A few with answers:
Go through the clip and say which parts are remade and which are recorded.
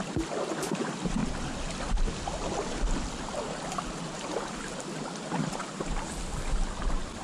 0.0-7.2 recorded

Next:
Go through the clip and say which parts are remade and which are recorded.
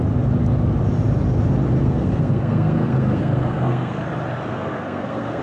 0.0-1.8 recorded; 1.8-4.0 remade; 4.0-4.5 recorded; 4.5-5.4 remade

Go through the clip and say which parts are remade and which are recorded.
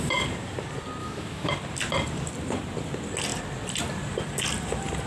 0.0-1.0 recorded; 1.0-1.5 remade; 1.5-5.1 recorded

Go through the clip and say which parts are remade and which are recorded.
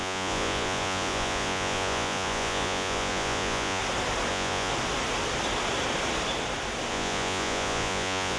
0.0-3.8 remade; 3.8-4.3 recorded; 4.3-4.7 remade; 4.7-6.9 recorded; 6.9-8.4 remade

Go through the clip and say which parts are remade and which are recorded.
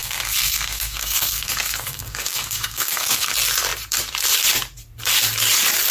0.0-3.3 remade; 3.3-5.9 recorded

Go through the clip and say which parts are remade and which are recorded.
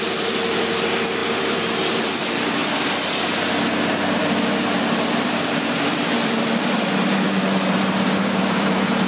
0.0-2.6 remade; 2.6-4.2 recorded; 4.2-9.1 remade